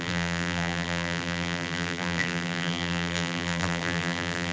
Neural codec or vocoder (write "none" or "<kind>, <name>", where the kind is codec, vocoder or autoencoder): vocoder, BigVGAN v2